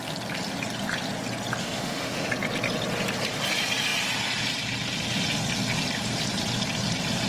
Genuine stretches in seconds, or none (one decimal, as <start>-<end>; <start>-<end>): 0.0-1.6; 2.3-7.3